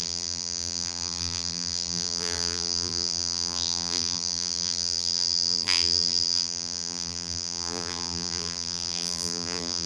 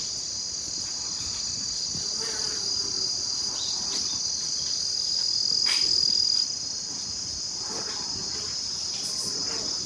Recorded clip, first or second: second